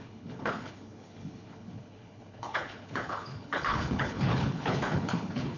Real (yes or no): no